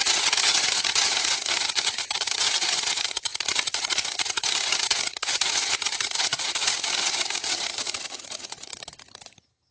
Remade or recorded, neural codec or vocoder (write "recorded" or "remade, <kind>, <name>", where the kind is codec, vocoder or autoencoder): remade, vocoder, HiFi-GAN